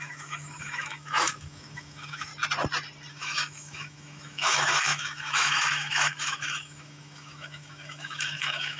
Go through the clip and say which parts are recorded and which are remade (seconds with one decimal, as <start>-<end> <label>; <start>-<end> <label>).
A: 0.0-2.3 remade; 2.3-3.1 recorded; 3.1-8.8 remade